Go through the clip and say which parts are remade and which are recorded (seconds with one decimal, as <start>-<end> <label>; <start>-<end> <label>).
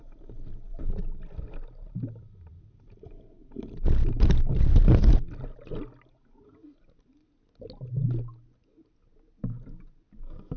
0.0-10.6 recorded